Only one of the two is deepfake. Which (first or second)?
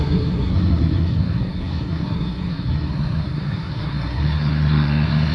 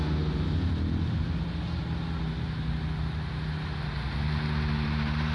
first